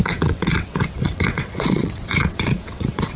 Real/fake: fake